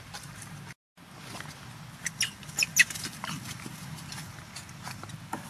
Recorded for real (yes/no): yes